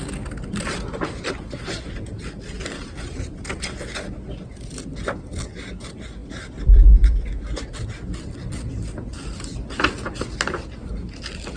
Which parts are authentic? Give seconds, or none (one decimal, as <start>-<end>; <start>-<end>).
0.0-11.6